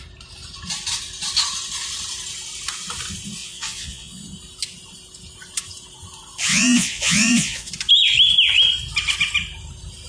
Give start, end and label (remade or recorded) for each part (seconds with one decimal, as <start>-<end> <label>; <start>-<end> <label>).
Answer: 0.0-3.4 recorded; 3.4-4.2 remade; 4.2-6.5 recorded; 6.5-7.7 remade; 7.7-10.1 recorded